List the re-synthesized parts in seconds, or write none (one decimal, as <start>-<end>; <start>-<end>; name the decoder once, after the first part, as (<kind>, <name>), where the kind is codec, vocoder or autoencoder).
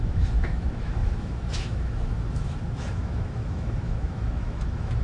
0.0-5.0 (autoencoder, DAC-VAE)